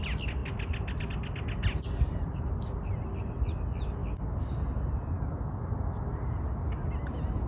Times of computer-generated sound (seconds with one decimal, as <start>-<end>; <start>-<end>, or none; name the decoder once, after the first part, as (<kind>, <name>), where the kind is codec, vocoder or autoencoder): none